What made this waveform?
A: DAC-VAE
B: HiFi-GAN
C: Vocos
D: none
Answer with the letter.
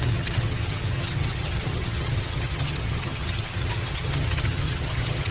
B